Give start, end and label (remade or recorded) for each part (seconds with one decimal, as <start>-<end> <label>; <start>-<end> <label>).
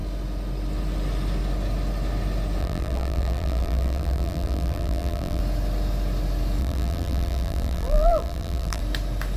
0.0-2.6 recorded; 2.6-5.4 remade; 5.4-6.6 recorded; 6.6-8.8 remade; 8.8-9.4 recorded